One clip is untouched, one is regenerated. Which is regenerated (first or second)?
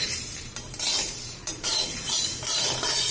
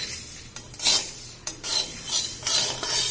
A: first